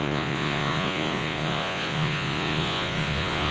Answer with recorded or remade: remade